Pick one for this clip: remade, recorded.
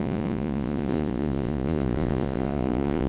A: remade